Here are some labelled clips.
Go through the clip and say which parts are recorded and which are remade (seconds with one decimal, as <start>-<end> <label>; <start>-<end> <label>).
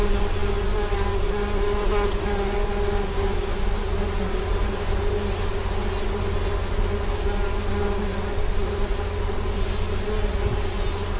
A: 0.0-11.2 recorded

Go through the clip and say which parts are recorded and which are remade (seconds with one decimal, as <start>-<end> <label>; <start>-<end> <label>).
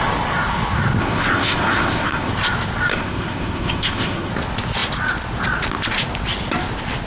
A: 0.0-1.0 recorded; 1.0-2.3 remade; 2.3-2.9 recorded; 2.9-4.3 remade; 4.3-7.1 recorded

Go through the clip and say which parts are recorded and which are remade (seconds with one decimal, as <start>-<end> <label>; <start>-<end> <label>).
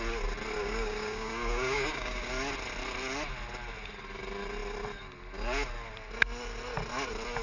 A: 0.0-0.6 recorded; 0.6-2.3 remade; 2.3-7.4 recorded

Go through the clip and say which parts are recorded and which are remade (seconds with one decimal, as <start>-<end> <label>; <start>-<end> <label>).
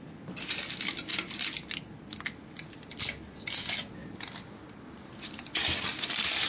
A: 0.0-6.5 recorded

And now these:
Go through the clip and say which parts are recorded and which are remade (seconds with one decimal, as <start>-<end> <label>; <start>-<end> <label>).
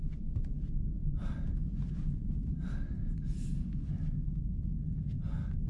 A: 0.0-5.7 recorded